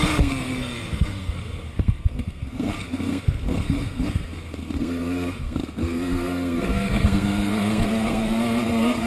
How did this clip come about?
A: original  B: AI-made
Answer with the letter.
B